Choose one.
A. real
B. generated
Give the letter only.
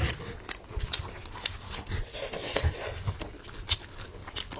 A